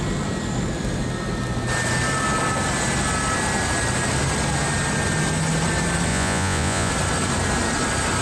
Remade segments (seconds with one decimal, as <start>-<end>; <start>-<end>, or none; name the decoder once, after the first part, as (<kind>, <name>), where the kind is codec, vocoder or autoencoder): 6.1-6.9 (vocoder, Vocos)